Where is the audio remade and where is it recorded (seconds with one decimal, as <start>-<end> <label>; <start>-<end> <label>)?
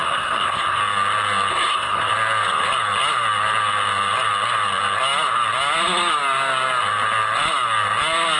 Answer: 0.0-0.8 remade; 0.8-1.5 recorded; 1.5-2.1 remade; 2.1-8.4 recorded